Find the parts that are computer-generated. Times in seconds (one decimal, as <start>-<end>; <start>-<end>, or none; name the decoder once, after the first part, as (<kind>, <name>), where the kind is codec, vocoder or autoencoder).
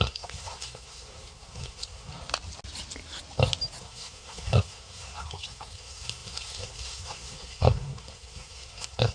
0.0-2.1 (codec, SNAC); 3.8-9.1